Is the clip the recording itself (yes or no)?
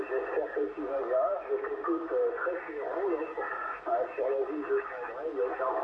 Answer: yes